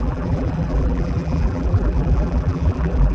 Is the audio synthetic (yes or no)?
yes